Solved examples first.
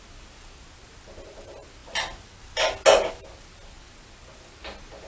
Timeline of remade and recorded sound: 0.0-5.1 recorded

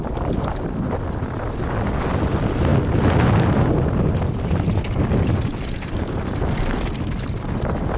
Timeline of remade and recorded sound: 0.0-8.0 recorded

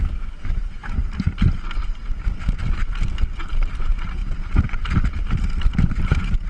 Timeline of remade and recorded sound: 0.0-0.8 remade; 0.8-3.5 recorded; 3.5-4.2 remade; 4.2-6.0 recorded; 6.0-6.5 remade

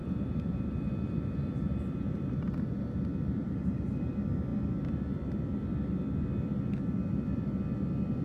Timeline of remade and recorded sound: 0.0-2.8 remade; 2.8-3.4 recorded; 3.4-3.9 remade; 3.9-8.2 recorded

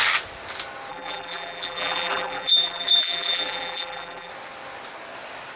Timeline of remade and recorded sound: 0.0-0.9 recorded; 0.9-4.3 remade; 4.3-5.6 recorded

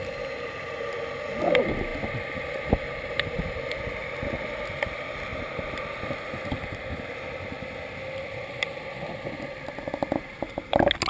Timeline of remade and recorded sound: 0.0-11.1 recorded

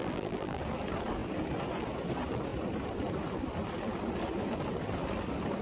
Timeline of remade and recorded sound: 0.0-0.6 remade; 0.6-5.6 recorded

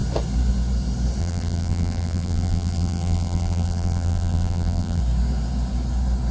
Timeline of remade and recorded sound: 0.0-1.2 recorded; 1.2-5.0 remade; 5.0-6.3 recorded